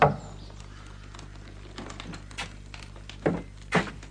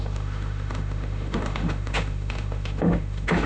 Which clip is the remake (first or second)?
second